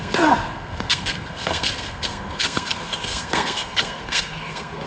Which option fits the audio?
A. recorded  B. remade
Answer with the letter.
B